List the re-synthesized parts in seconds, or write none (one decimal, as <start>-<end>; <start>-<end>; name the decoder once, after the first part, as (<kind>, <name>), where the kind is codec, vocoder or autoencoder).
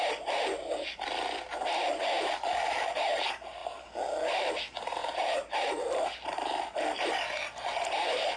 3.6-4.6 (vocoder, BigVGAN v2); 5.0-7.1